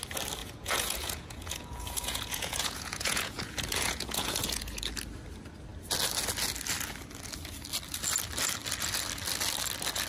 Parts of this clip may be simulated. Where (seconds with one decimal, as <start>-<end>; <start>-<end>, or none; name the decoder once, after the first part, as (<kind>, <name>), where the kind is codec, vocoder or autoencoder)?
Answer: 0.4-4.8 (vocoder, Vocos)